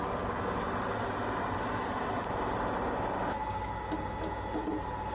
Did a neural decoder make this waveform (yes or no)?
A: no